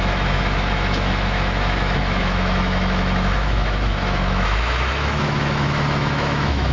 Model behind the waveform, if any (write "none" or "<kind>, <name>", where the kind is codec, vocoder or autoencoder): autoencoder, DAC-VAE